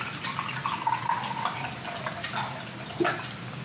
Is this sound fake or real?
real